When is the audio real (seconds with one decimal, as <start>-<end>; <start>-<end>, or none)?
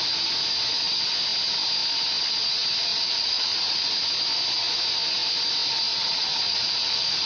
0.0-2.9; 3.9-5.9